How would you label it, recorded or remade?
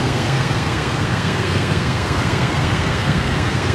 remade